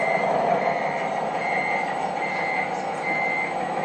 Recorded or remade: recorded